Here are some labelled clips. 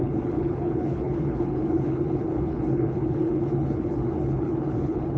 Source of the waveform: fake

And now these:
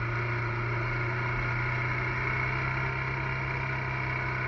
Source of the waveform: real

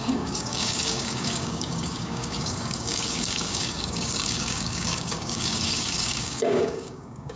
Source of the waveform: fake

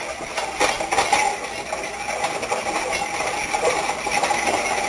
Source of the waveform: real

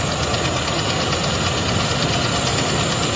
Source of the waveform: real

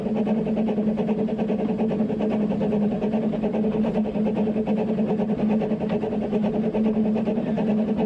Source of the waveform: real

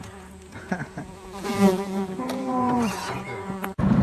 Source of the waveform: fake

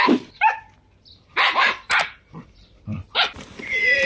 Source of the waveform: fake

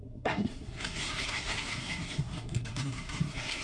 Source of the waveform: fake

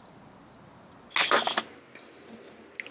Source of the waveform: real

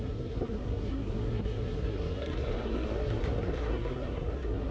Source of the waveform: fake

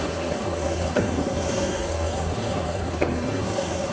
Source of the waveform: fake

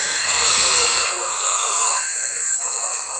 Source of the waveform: fake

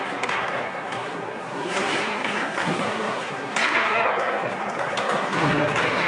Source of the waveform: fake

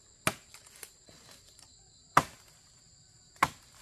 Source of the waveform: real